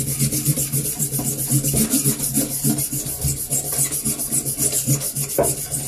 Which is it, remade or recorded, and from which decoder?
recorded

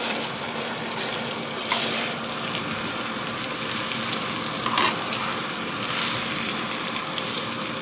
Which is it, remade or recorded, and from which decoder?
recorded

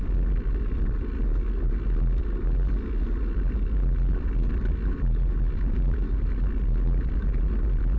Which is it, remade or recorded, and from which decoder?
recorded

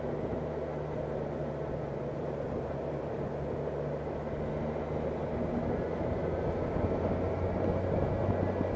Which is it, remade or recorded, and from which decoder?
recorded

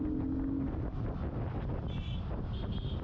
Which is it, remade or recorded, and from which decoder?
recorded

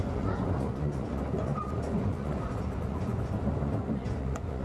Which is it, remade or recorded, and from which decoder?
remade, vocoder, Vocos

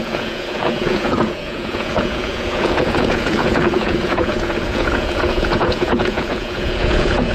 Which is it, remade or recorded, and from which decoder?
remade, vocoder, Vocos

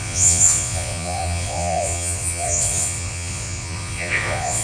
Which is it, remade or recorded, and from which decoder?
remade, vocoder, Vocos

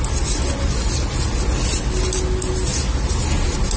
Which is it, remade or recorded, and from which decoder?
recorded